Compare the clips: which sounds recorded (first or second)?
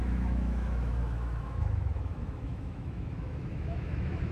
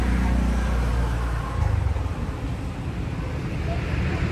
second